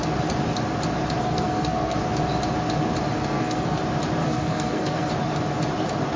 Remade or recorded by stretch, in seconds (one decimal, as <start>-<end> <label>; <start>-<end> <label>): 0.0-1.2 recorded; 1.2-2.0 remade; 2.0-3.2 recorded; 3.2-3.8 remade; 3.8-4.2 recorded; 4.2-5.1 remade; 5.1-6.2 recorded